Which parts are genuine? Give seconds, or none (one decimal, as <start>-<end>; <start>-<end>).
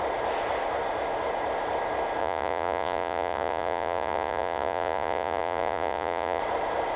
0.0-2.2; 6.4-7.0